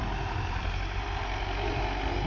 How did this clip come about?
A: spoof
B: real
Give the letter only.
B